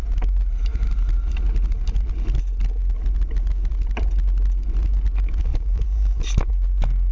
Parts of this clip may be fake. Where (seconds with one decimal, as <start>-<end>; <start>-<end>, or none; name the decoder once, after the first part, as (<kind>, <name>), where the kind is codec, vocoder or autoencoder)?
5.5-6.5 (vocoder, BigVGAN v2)